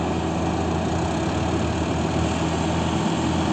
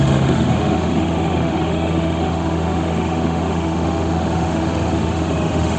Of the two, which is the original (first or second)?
first